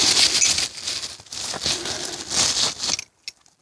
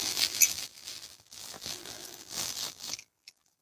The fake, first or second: second